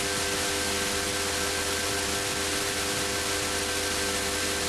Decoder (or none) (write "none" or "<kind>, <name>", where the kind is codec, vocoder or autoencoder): none